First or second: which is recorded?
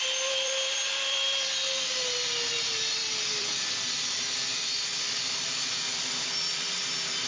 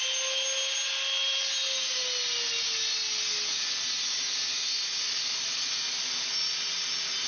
second